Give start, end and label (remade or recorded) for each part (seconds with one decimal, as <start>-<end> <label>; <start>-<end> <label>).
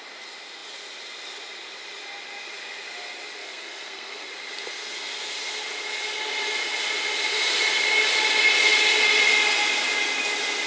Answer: 0.0-3.4 recorded; 3.4-4.3 remade; 4.3-10.7 recorded